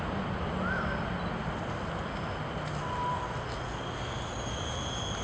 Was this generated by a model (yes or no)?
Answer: no